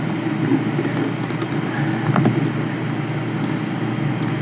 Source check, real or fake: real